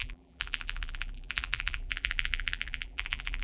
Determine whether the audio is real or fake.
fake